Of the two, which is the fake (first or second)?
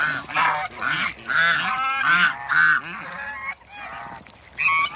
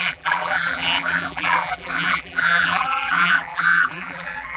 second